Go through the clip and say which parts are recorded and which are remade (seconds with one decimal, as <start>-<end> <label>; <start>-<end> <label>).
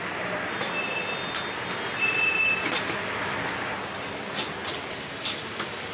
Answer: 0.0-5.9 recorded